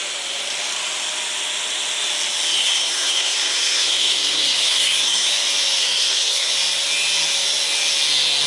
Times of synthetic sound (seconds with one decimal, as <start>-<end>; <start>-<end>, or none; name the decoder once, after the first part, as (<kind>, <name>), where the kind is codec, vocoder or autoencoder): 2.6-5.3 (codec, SNAC); 5.8-6.5